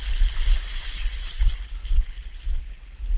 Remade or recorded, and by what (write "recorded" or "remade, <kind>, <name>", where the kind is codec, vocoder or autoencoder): recorded